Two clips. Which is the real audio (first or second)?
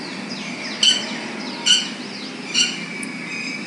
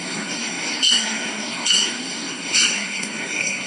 first